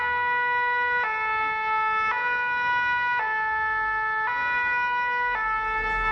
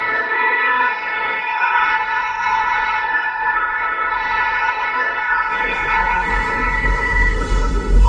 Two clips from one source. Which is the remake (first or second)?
second